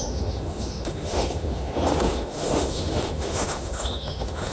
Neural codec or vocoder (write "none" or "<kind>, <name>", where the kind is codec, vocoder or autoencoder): autoencoder, DAC-VAE